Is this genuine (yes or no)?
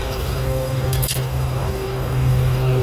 no